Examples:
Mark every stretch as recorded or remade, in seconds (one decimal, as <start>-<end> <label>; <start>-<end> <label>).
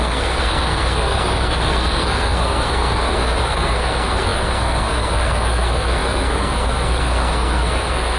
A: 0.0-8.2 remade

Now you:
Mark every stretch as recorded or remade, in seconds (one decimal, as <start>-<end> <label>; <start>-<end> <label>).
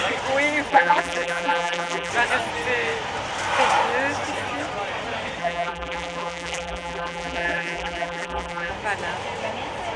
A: 0.0-0.7 recorded; 0.7-2.1 remade; 2.1-5.4 recorded; 5.4-8.7 remade; 8.7-10.0 recorded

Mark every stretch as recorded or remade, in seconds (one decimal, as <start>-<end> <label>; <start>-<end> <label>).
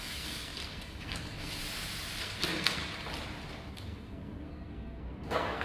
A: 0.0-1.6 remade; 1.6-2.2 recorded; 2.2-2.8 remade; 2.8-3.7 recorded; 3.7-5.6 remade